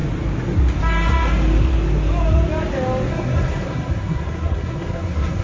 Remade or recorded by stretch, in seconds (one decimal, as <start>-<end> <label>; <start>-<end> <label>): 0.0-3.1 recorded; 3.1-5.4 remade